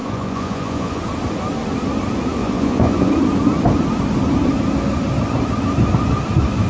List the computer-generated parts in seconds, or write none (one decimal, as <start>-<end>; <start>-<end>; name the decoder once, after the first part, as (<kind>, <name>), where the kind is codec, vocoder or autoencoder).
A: 0.0-1.0 (vocoder, Vocos); 2.4-3.1